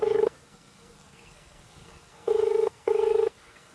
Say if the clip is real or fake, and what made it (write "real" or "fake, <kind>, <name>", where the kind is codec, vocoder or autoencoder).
fake, codec, SNAC